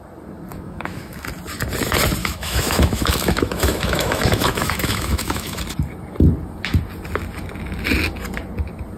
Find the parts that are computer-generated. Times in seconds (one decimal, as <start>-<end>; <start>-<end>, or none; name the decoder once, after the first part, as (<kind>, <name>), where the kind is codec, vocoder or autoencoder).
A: 0.5-1.2 (autoencoder, DAC-VAE); 2.2-5.6